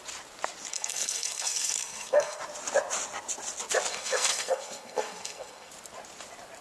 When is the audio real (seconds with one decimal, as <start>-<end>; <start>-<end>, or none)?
0.0-0.7; 2.4-3.9; 5.7-6.6